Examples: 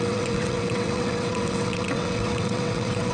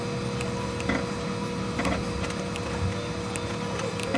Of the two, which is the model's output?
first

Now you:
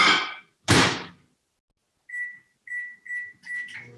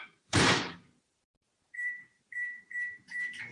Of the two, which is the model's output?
second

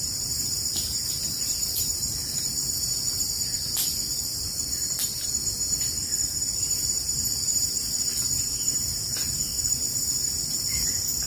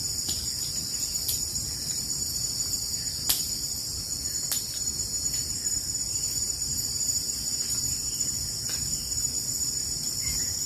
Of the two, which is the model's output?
second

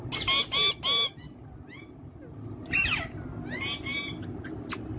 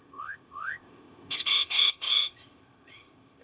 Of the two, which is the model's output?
second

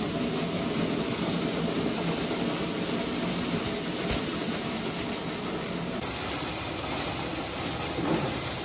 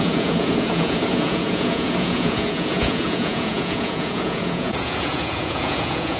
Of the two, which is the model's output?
second